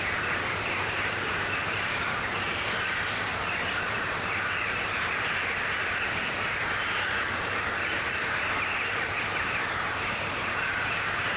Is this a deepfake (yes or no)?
yes